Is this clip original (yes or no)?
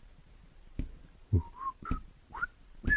yes